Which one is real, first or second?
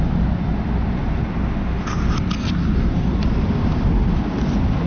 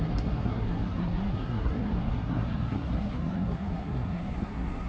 first